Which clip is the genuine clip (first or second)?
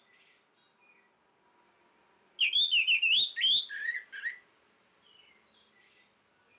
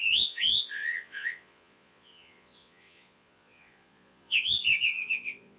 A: first